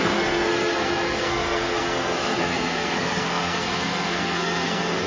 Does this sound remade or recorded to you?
remade